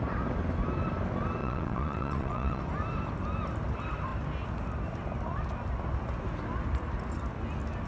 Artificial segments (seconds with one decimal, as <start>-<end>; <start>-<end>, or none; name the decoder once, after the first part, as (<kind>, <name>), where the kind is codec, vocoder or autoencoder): 1.4-2.6 (vocoder, WaveNeXt)